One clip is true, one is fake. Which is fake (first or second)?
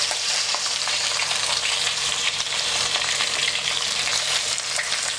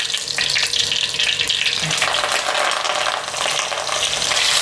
first